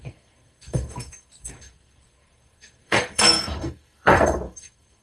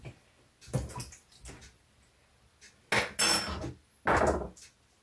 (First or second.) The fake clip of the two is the first